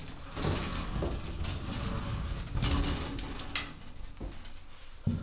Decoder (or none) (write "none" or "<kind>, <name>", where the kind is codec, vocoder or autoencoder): none